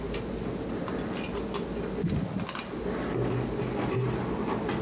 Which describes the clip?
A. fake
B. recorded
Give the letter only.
B